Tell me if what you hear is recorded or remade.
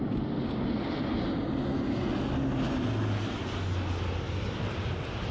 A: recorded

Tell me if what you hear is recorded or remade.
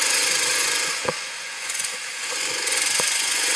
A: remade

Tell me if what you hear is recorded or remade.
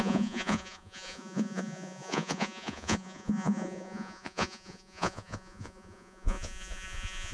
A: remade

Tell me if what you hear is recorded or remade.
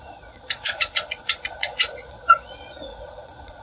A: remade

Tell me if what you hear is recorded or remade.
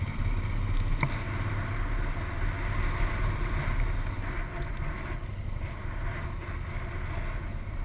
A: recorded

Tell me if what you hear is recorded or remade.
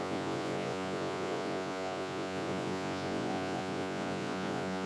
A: remade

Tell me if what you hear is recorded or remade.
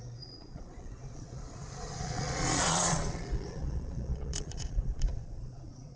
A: remade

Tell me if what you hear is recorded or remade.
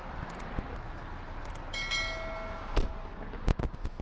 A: recorded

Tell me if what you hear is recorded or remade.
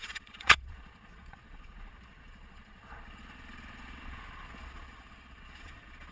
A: remade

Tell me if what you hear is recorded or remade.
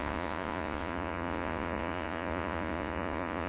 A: remade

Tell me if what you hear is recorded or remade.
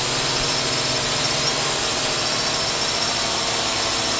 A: recorded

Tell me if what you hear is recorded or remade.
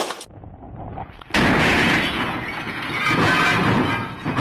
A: remade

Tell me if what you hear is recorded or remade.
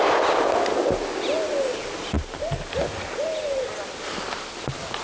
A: recorded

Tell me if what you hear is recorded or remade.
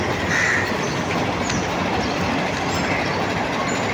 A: recorded